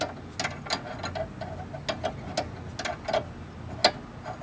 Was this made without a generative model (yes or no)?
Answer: yes